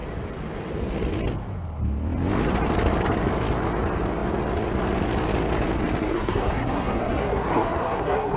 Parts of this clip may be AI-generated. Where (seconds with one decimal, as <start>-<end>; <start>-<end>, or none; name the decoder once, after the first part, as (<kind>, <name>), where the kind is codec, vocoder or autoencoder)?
6.0-8.4 (codec, SNAC)